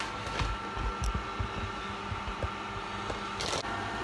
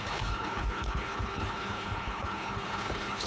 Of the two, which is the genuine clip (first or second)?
first